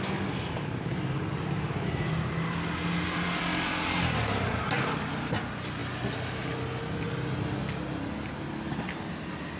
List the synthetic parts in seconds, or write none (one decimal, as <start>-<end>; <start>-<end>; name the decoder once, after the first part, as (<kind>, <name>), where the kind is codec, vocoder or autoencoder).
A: none